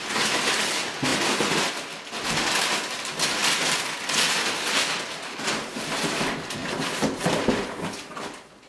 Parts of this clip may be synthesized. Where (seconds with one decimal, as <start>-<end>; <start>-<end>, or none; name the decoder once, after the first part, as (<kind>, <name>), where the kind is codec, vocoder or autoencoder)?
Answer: 6.6-8.1 (vocoder, BigVGAN v2)